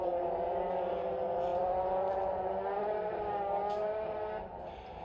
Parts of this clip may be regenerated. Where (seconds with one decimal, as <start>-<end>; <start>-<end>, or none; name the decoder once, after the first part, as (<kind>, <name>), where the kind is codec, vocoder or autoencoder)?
0.0-5.0 (vocoder, BigVGAN v2)